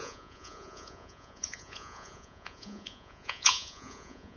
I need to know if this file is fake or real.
fake